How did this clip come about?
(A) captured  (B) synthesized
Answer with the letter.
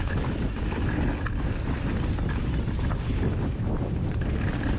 B